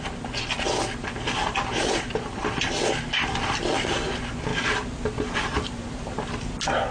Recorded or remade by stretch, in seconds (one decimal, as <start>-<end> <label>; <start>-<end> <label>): 0.0-6.9 recorded